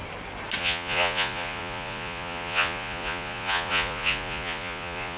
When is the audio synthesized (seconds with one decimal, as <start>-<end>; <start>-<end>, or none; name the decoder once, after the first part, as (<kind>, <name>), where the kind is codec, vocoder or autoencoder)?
0.6-5.2 (vocoder, Vocos)